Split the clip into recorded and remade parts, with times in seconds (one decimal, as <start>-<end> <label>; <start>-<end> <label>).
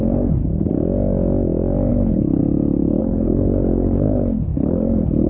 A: 0.0-0.5 remade; 0.5-1.9 recorded; 1.9-2.4 remade; 2.4-3.0 recorded; 3.0-5.3 remade